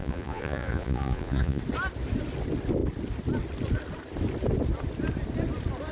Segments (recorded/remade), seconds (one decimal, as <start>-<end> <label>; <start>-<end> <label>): 0.0-1.6 remade; 1.6-5.9 recorded